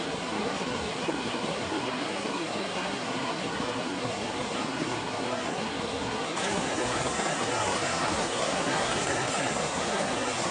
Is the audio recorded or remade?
remade